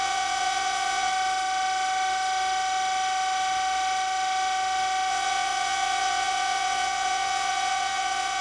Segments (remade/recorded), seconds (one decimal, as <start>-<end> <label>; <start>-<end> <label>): 0.0-1.1 remade; 1.1-5.1 recorded; 5.1-8.4 remade